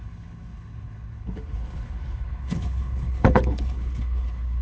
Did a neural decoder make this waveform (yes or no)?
yes